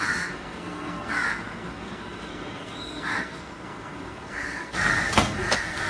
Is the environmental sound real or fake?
fake